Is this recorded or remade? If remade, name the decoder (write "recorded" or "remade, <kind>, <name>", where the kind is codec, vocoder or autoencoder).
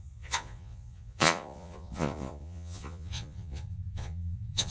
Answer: remade, vocoder, Vocos